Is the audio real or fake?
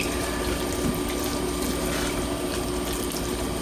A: real